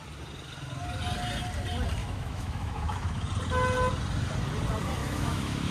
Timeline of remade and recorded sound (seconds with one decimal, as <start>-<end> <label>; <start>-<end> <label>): 0.0-2.0 recorded; 2.0-3.3 remade; 3.3-5.0 recorded; 5.0-5.7 remade

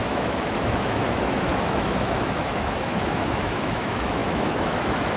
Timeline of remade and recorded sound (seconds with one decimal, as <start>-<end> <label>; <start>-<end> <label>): 0.0-5.2 remade